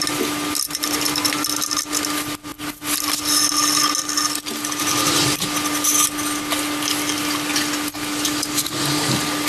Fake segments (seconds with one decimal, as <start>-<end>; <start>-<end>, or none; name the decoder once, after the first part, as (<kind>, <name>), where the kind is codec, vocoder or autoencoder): none